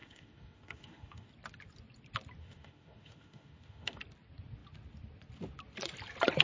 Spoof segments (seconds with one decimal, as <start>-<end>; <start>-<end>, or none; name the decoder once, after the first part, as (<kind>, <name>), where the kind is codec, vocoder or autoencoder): 0.0-1.3 (autoencoder, DAC-VAE); 2.4-4.0